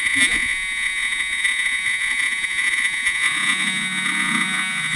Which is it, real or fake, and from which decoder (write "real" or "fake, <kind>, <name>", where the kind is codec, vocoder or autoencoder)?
fake, vocoder, Vocos